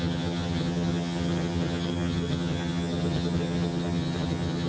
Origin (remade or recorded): remade